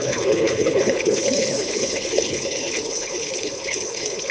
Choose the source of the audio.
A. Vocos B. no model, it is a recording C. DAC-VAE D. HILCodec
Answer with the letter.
D